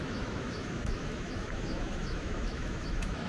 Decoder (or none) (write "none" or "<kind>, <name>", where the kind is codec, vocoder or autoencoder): autoencoder, DAC-VAE